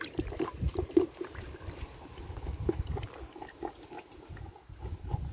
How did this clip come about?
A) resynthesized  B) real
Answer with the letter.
B